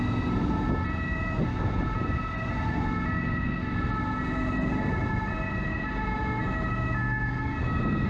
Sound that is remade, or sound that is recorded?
recorded